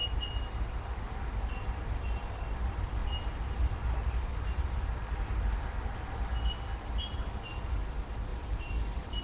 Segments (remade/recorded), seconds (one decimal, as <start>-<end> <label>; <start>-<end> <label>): 0.0-8.3 recorded; 8.3-9.2 remade